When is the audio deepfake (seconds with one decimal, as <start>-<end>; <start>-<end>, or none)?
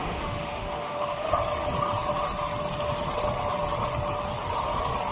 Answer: 0.0-1.3